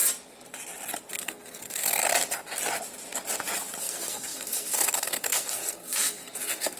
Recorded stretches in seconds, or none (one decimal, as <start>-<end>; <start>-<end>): 0.0-1.1; 2.0-3.8